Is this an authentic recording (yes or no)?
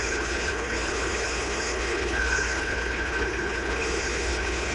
no